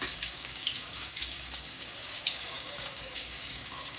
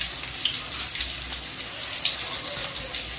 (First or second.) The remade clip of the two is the first